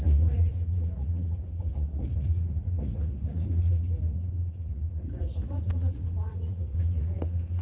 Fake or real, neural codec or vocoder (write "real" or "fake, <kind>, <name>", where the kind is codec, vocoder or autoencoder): fake, vocoder, Vocos